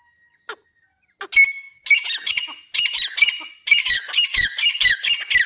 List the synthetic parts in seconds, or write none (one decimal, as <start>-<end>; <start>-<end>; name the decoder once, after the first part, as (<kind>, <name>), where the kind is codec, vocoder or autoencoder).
1.4-2.0 (codec, DAC); 3.8-5.1